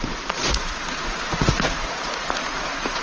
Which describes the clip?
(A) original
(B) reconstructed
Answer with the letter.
B